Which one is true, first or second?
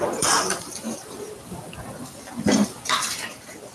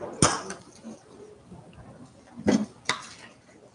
second